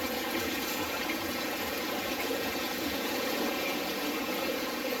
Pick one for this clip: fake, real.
fake